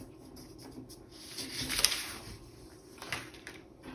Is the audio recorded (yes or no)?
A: no